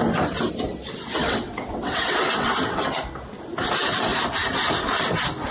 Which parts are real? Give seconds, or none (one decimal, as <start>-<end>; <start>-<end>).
0.0-1.2; 2.5-5.5